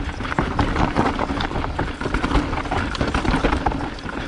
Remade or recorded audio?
recorded